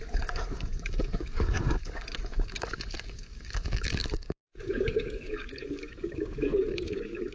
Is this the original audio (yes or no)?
no